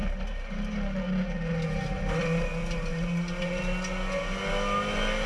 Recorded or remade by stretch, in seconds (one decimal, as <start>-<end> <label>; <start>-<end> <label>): 0.0-2.9 recorded; 2.9-3.6 remade; 3.6-5.3 recorded